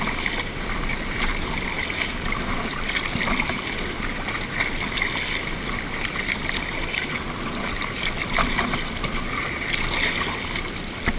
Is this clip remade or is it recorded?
recorded